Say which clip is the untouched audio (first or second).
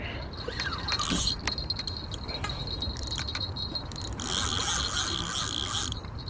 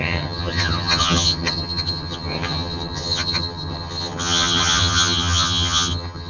first